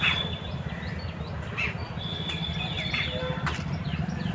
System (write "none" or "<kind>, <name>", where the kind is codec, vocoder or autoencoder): none